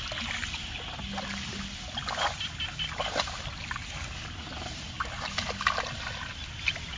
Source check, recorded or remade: recorded